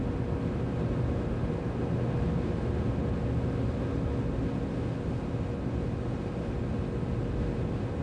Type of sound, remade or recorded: recorded